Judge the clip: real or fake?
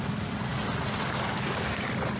real